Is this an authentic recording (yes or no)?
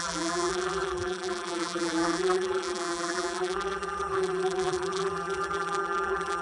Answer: no